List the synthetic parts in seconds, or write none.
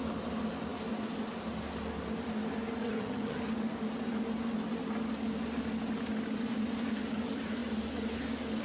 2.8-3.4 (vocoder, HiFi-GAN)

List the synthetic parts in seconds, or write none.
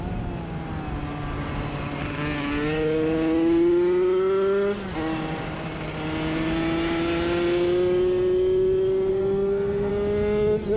9.1-9.9 (codec, SNAC)